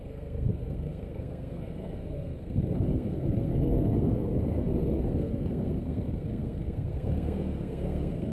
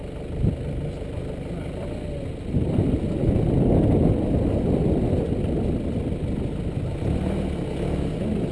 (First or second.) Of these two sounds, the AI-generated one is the first